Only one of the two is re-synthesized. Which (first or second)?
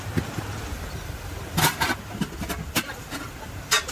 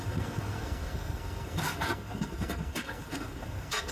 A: second